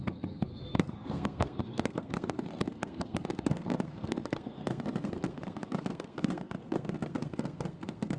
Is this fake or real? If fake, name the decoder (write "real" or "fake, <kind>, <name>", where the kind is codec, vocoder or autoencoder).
fake, codec, SNAC